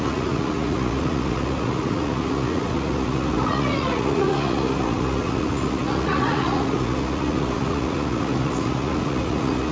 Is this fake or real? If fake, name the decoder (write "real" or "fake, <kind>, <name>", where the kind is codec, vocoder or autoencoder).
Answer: fake, vocoder, Vocos